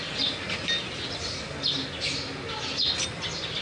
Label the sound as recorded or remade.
recorded